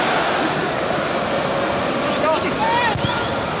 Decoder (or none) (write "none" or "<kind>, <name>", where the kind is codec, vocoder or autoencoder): none